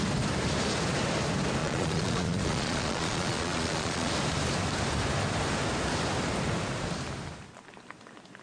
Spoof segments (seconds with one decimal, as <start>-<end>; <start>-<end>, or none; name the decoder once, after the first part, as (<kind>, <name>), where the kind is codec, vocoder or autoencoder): 1.6-4.1 (vocoder, Vocos)